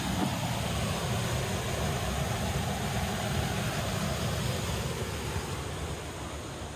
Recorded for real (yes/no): yes